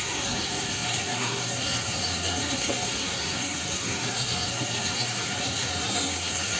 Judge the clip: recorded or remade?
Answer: remade